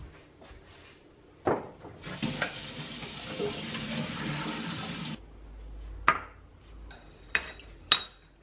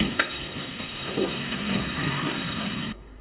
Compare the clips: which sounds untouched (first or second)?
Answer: first